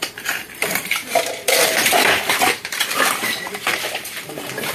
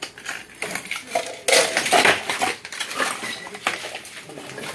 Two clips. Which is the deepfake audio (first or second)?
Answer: first